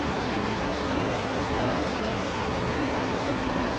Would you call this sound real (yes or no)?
no